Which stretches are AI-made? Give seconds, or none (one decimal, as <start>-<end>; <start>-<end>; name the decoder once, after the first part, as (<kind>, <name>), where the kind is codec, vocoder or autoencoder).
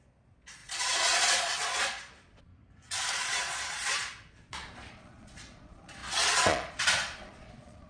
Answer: 0.0-2.5 (vocoder, Vocos); 3.1-7.9